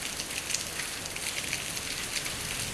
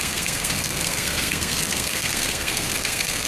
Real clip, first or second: first